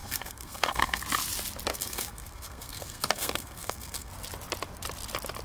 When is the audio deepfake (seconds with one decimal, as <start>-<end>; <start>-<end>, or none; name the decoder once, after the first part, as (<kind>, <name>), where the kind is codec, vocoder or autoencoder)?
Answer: 0.0-1.0 (codec, SNAC); 1.7-4.1